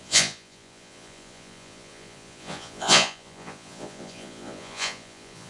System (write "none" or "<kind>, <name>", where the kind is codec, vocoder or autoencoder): vocoder, Vocos